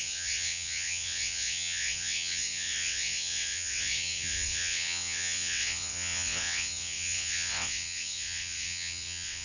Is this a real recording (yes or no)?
no